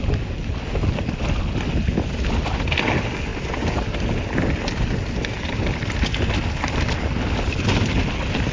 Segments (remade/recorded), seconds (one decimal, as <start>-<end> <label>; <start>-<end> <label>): 0.0-8.5 recorded